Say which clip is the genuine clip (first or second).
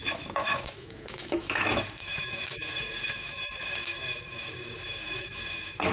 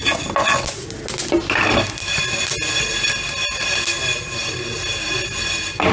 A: second